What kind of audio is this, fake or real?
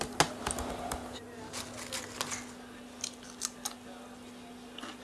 real